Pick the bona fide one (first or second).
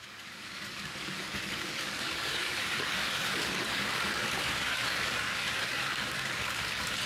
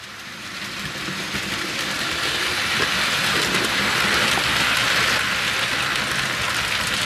second